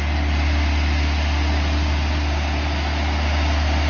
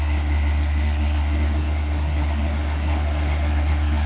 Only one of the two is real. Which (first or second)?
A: first